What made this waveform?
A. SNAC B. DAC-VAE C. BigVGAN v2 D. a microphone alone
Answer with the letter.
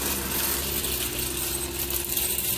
D